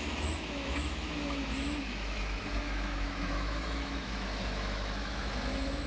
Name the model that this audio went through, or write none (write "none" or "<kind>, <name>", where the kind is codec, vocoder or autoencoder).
autoencoder, DAC-VAE